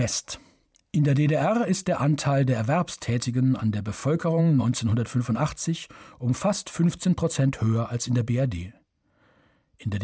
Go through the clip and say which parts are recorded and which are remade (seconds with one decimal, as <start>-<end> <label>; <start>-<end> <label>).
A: 0.0-4.0 recorded; 4.0-4.6 remade; 4.6-10.0 recorded

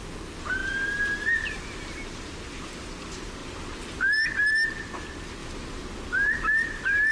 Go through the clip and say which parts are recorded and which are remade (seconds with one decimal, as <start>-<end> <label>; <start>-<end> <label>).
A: 0.0-7.1 recorded

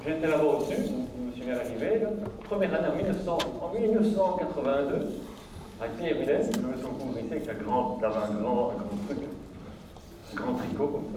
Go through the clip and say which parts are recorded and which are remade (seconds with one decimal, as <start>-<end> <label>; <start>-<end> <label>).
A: 0.0-2.2 recorded; 2.2-3.5 remade; 3.5-11.2 recorded

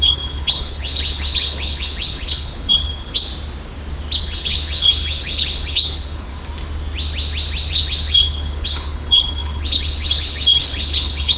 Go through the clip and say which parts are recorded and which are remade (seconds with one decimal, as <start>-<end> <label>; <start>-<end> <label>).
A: 0.0-3.3 remade; 3.3-4.2 recorded; 4.2-6.3 remade; 6.3-7.7 recorded; 7.7-11.4 remade

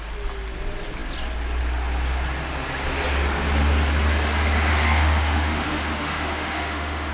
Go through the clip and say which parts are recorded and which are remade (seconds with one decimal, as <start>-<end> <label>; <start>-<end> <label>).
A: 0.0-4.7 recorded; 4.7-7.1 remade

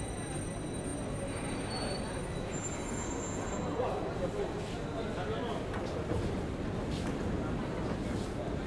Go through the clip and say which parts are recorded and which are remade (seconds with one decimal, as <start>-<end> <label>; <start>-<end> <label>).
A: 0.0-8.7 recorded